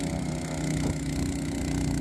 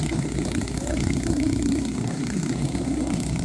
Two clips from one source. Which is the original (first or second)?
first